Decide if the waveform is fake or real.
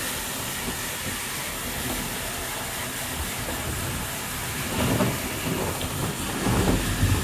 real